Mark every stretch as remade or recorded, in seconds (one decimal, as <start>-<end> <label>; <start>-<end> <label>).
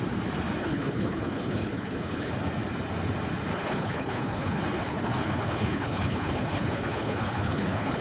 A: 0.0-0.6 recorded; 0.6-2.3 remade; 2.3-3.5 recorded; 3.5-8.0 remade